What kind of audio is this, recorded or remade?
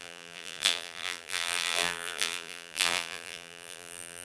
remade